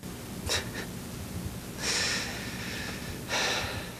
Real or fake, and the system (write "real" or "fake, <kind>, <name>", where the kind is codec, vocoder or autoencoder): real